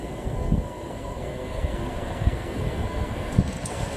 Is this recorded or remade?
remade